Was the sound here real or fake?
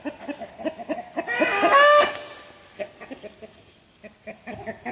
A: real